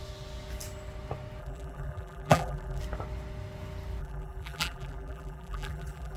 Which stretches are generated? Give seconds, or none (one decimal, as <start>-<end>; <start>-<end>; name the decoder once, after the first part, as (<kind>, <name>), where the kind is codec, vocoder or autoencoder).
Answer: 1.4-2.8 (vocoder, BigVGAN v2); 4.0-6.2